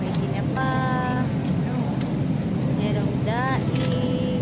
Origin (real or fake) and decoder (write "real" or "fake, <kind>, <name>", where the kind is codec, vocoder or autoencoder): real